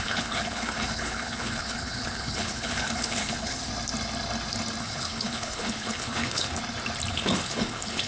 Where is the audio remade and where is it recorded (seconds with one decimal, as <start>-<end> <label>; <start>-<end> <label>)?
0.0-3.7 remade; 3.7-4.8 recorded; 4.8-6.6 remade; 6.6-7.1 recorded; 7.1-8.1 remade